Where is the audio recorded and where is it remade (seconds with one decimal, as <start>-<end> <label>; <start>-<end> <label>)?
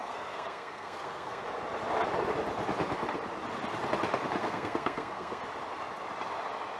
0.0-1.4 remade; 1.4-4.4 recorded; 4.4-5.4 remade; 5.4-6.8 recorded